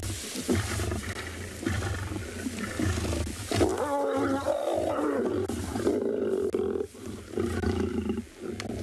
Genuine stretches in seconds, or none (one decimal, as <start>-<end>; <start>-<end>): 0.0-8.8